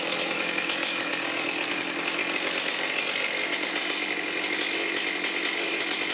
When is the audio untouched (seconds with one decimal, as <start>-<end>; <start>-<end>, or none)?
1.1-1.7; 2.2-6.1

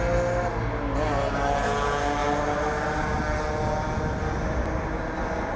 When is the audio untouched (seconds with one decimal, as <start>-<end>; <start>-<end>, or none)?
0.0-5.6

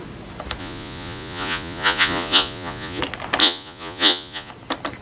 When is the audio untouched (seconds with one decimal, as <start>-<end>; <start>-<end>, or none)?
0.0-0.6; 3.0-3.4; 4.5-5.0

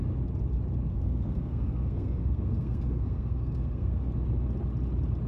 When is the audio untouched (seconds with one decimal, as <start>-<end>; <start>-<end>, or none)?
0.0-0.9; 4.1-5.3

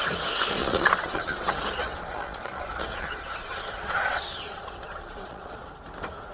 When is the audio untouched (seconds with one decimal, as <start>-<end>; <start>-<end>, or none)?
0.0-0.6; 1.5-1.9; 5.7-6.3

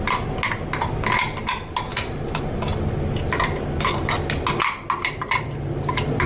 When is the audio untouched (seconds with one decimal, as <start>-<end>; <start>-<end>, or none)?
0.0-6.3